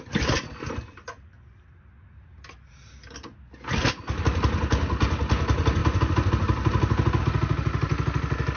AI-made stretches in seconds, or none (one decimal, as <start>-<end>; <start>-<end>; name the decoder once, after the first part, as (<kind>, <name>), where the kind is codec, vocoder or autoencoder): none